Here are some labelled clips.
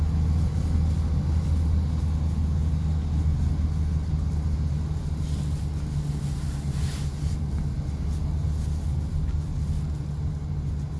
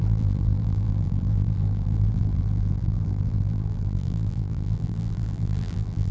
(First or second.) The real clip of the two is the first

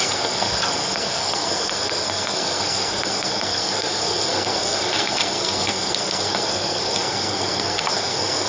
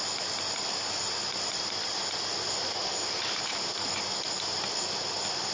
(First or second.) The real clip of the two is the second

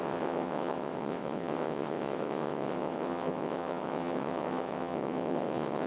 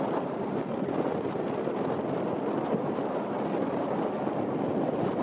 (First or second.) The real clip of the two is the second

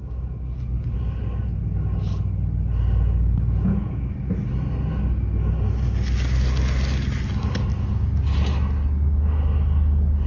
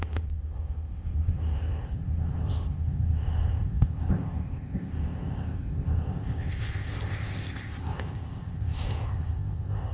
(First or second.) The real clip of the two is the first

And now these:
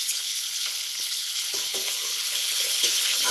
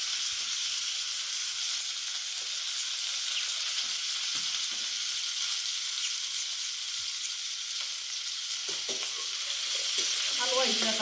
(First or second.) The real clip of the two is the second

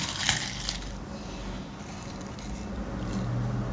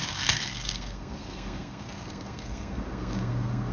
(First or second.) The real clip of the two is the first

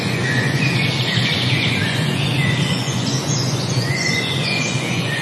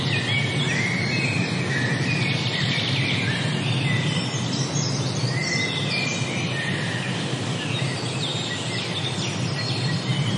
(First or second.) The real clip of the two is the second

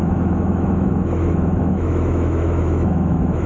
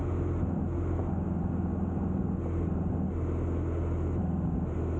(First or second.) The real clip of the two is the second